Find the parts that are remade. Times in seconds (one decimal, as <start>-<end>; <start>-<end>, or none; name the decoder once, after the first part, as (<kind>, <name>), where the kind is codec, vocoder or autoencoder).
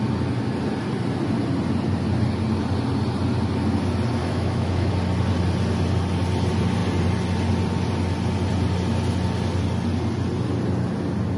4.2-4.9 (autoencoder, DAC-VAE)